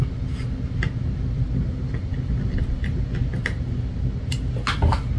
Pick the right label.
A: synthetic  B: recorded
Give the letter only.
B